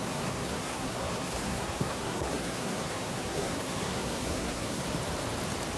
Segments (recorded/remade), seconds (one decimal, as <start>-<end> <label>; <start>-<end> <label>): 0.0-4.8 remade; 4.8-5.8 recorded